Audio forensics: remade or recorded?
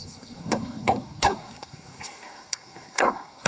remade